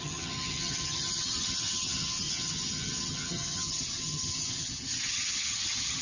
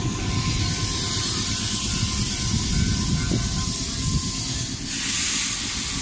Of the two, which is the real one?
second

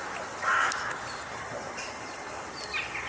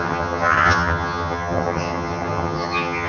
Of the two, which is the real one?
first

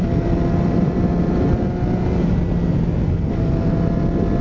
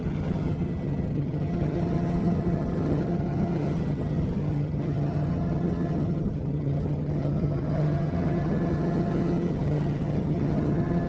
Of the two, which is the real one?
first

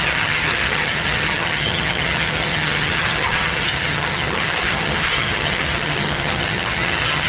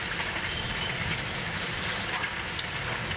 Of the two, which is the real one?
second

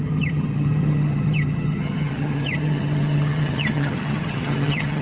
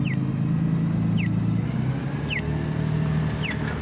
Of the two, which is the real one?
second